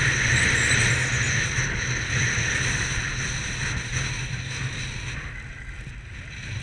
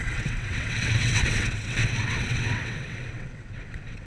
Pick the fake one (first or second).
second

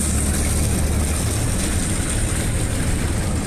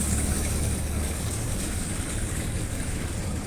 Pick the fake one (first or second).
second